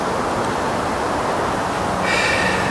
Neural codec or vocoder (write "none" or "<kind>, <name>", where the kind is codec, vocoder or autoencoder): none